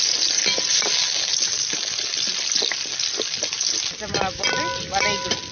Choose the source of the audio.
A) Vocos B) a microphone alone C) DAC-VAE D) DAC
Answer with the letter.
B